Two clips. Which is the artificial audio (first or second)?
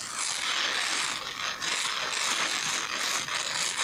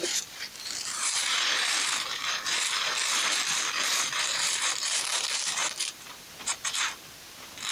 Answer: second